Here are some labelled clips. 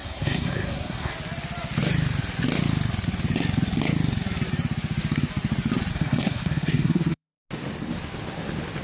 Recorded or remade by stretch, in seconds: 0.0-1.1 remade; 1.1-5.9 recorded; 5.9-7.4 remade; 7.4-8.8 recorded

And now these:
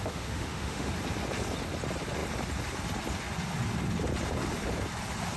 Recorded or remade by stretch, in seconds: 0.0-0.9 remade; 0.9-5.4 recorded

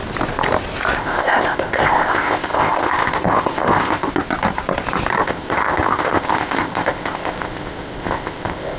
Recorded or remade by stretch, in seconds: 0.0-1.0 recorded; 1.0-4.1 remade; 4.1-5.2 recorded; 5.2-8.8 remade

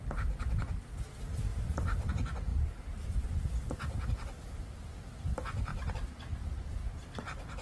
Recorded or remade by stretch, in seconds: 0.0-1.5 recorded; 1.5-2.1 remade; 2.1-2.5 recorded; 2.5-3.4 remade; 3.4-5.7 recorded; 5.7-7.6 remade